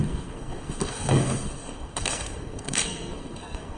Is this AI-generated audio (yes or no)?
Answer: yes